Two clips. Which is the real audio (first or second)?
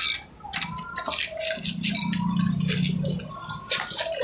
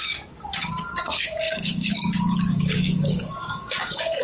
first